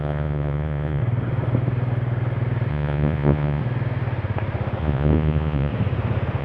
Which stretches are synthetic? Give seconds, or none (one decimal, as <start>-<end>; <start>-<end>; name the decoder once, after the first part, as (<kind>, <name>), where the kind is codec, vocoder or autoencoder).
0.0-1.0 (vocoder, Vocos); 2.7-3.6; 4.8-5.7